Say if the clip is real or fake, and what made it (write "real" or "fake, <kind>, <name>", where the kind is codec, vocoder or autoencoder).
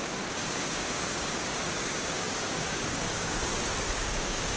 fake, codec, DAC